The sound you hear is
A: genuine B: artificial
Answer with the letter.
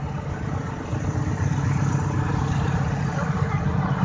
A